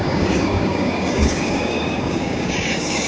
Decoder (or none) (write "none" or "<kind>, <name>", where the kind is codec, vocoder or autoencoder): codec, DAC